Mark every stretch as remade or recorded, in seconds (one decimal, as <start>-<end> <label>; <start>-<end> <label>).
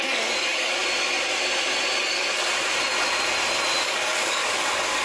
0.0-0.8 remade; 0.8-2.0 recorded; 2.0-2.5 remade; 2.5-3.8 recorded; 3.8-5.0 remade